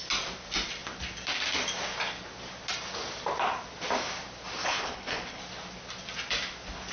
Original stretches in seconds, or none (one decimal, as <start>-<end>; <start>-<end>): 0.0-4.6; 5.4-6.9